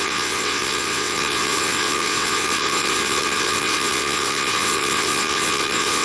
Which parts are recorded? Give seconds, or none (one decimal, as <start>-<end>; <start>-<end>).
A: none